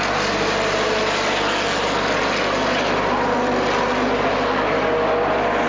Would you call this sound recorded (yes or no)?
yes